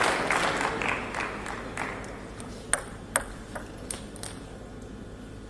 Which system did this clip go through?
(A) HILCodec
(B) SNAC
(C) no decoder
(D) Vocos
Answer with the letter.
C